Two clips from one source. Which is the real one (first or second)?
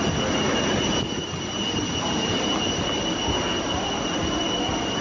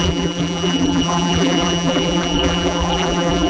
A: first